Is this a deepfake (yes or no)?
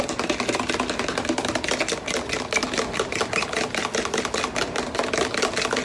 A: no